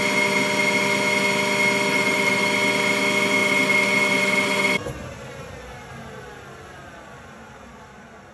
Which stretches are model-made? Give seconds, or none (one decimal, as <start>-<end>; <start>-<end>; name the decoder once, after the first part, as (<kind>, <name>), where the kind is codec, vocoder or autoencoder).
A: 1.9-2.4 (vocoder, BigVGAN v2); 3.4-5.5